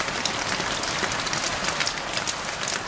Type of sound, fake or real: real